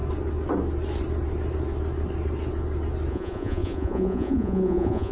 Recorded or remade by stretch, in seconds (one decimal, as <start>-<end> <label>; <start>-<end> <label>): 0.0-3.1 recorded; 3.1-5.1 remade